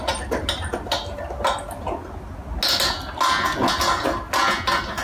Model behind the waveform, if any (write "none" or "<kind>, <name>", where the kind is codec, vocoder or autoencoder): none